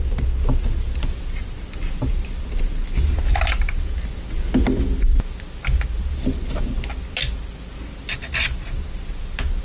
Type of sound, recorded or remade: recorded